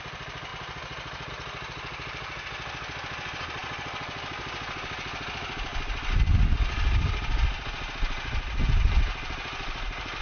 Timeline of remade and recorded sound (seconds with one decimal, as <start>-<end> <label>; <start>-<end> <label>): 0.0-10.2 recorded